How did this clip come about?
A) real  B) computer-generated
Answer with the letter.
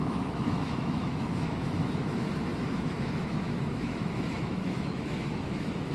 B